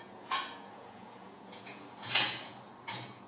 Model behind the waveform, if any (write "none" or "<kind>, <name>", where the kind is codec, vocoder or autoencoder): vocoder, Vocos